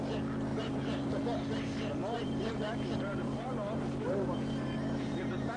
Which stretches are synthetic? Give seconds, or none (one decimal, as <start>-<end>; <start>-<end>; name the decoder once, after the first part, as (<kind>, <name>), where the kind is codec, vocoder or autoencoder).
0.5-1.1 (vocoder, BigVGAN v2); 2.0-5.6